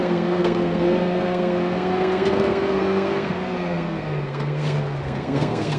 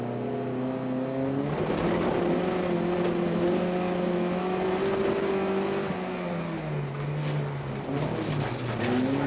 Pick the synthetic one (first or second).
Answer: first